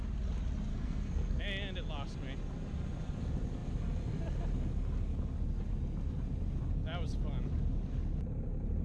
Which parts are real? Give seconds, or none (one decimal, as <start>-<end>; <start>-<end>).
0.0-0.7; 1.4-8.8